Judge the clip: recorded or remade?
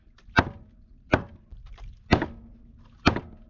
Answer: recorded